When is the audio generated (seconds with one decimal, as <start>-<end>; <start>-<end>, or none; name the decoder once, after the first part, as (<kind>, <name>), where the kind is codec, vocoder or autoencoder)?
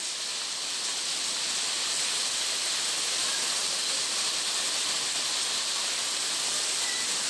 none